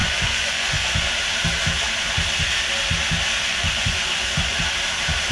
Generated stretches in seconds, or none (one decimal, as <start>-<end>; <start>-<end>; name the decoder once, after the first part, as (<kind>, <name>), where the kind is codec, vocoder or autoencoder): 0.0-1.1 (vocoder, Vocos); 3.4-4.6